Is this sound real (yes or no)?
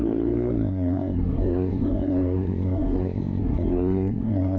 no